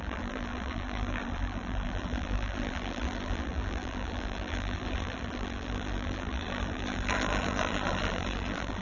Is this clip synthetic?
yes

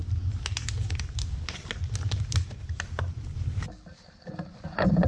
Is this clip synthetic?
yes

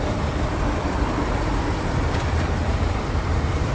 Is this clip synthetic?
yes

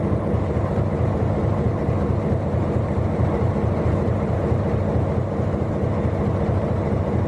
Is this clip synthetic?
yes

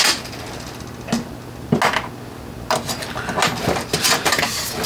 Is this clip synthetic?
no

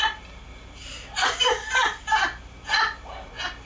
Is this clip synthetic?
no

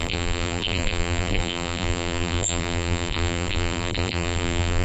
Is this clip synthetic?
yes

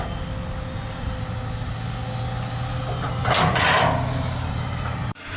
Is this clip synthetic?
no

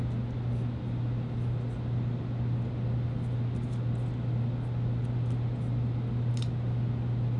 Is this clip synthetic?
no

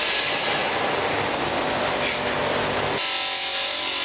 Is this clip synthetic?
no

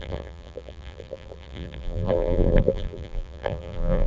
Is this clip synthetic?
yes